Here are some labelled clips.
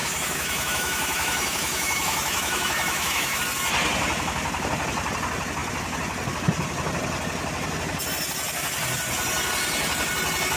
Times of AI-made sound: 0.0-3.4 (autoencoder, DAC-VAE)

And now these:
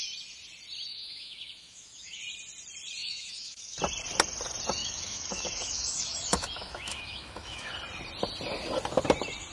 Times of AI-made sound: 0.9-2.2 (autoencoder, DAC-VAE); 3.0-3.8; 4.8-7.7

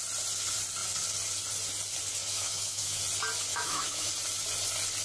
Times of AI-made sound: 2.3-3.0 (autoencoder, DAC-VAE); 3.5-4.1

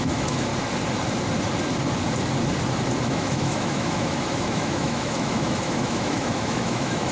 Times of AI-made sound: 0.0-0.5 (autoencoder, DAC-VAE); 3.0-7.1

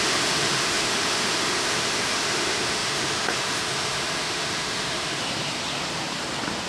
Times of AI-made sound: 0.0-5.2 (autoencoder, DAC-VAE)